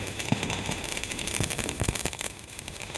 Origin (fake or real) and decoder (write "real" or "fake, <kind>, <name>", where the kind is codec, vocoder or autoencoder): fake, autoencoder, DAC-VAE